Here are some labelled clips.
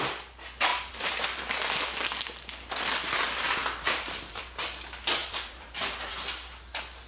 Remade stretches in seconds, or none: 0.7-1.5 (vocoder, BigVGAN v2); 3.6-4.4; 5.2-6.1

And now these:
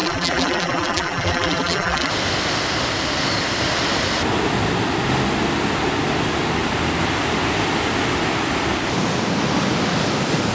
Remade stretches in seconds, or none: 0.0-2.1 (vocoder, BigVGAN v2)